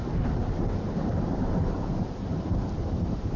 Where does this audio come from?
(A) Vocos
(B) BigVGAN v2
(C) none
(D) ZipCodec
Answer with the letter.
B